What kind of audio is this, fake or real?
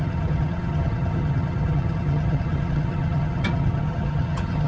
fake